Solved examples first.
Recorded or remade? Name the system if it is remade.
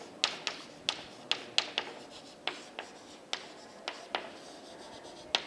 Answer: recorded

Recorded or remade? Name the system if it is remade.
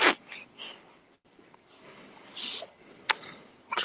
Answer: recorded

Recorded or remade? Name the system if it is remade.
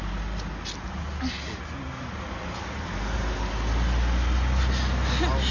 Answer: recorded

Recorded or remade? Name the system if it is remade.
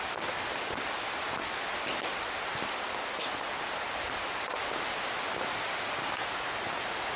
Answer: recorded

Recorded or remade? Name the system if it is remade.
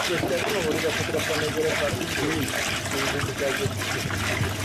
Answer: recorded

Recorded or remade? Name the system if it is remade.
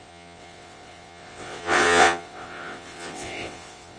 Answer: remade, vocoder, WaveNeXt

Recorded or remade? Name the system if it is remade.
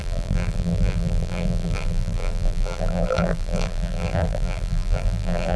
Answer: remade, vocoder, BigVGAN v2